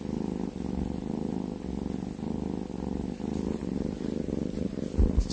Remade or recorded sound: recorded